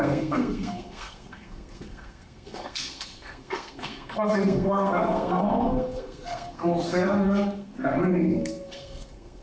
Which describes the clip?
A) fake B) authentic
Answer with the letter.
A